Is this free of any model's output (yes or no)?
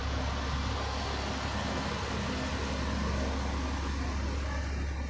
yes